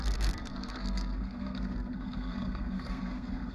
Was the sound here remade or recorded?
remade